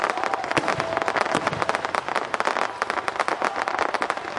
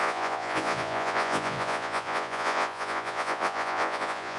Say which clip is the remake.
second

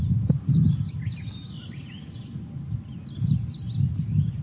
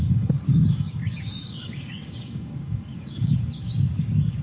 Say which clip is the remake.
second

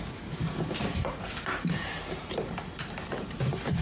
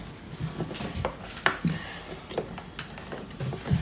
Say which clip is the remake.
first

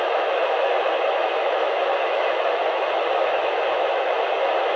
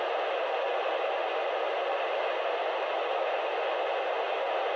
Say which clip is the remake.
first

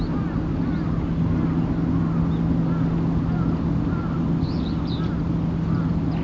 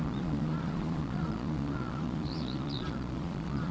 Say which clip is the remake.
second